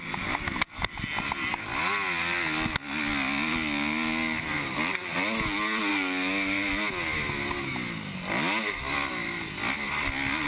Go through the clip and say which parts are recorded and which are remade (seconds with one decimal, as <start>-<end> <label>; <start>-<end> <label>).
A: 0.0-5.9 recorded; 5.9-6.7 remade; 6.7-10.5 recorded